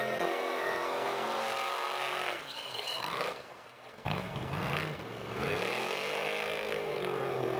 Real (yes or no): no